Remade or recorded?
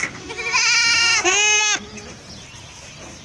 recorded